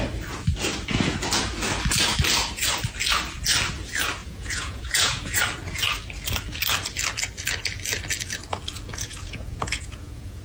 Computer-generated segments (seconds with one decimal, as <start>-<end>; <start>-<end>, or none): 4.2-5.4; 8.9-10.4